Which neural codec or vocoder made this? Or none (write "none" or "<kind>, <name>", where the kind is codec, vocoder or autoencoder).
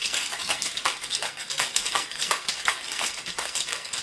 codec, SNAC